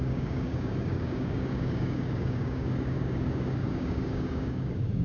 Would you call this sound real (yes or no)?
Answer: no